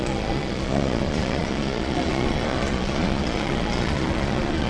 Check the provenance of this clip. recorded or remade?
remade